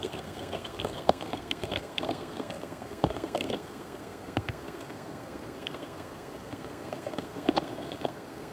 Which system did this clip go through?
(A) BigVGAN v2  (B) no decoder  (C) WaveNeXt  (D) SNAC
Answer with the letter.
D